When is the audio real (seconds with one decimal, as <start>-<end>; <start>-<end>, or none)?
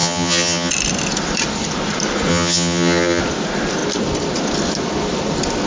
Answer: 0.7-2.3; 3.2-5.7